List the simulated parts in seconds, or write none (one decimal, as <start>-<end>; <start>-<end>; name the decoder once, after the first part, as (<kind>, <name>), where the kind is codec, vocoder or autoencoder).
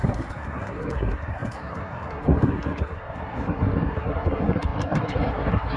0.0-5.8 (codec, SNAC)